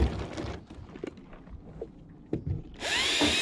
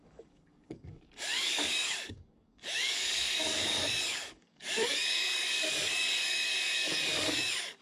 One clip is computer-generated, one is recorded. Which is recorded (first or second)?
first